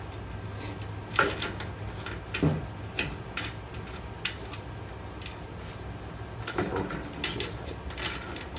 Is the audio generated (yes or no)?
no